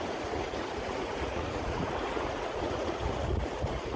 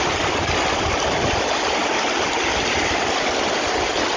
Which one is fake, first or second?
first